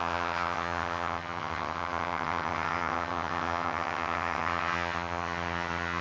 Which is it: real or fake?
fake